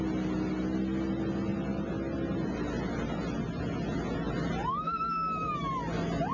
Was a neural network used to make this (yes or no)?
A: no